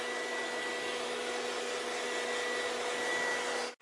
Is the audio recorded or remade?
recorded